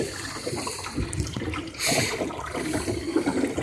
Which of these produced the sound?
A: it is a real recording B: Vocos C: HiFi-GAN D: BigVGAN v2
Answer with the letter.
A